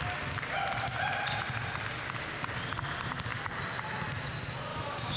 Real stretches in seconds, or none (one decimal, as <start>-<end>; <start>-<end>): 0.0-4.7